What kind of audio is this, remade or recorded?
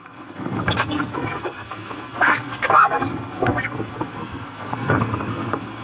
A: remade